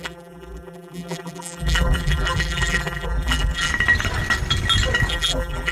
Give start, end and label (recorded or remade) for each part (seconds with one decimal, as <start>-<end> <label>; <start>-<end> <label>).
0.0-3.7 remade; 3.7-5.1 recorded; 5.1-5.7 remade